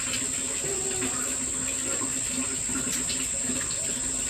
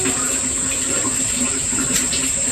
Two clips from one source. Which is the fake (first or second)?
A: second